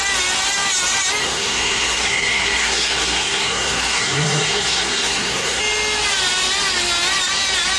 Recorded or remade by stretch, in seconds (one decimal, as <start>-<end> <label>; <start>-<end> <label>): 0.0-1.2 recorded; 1.2-5.6 remade; 5.6-7.8 recorded